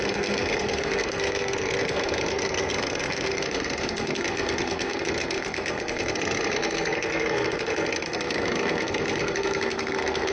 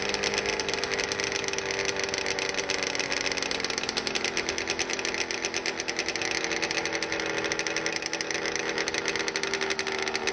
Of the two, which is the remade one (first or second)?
first